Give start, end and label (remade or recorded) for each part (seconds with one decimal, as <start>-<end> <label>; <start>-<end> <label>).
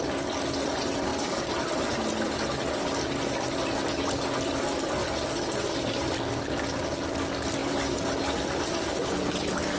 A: 0.0-9.8 recorded